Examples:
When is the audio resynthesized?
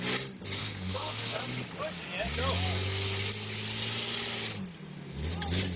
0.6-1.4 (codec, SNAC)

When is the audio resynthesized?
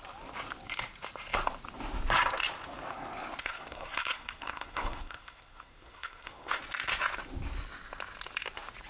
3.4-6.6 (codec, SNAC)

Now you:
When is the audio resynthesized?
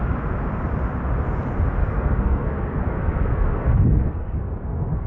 1.8-5.1 (codec, SNAC)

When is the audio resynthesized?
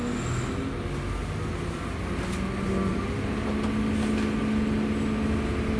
none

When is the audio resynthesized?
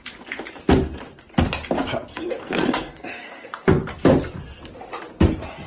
2.1-3.5 (codec, SNAC)